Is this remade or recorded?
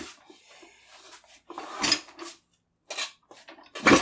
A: recorded